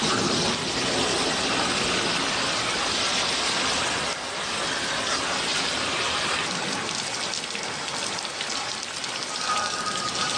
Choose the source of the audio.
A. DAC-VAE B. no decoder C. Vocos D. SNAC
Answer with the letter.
B